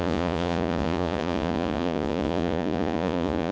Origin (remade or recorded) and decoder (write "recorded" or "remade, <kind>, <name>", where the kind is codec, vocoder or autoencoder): remade, vocoder, Vocos